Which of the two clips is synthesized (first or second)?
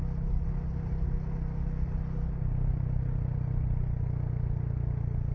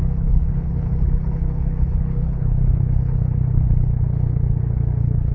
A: second